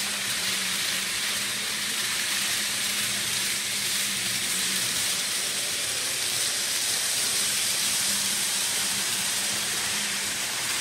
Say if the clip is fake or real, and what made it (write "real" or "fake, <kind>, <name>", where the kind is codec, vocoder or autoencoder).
fake, vocoder, BigVGAN v2